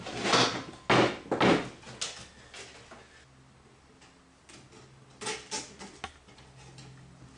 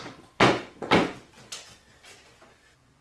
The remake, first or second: second